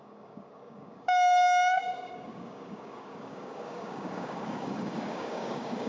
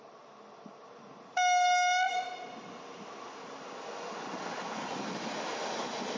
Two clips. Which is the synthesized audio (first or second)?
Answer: first